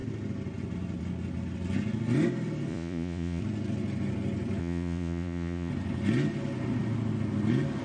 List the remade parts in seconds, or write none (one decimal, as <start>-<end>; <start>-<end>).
2.7-3.4; 4.6-5.7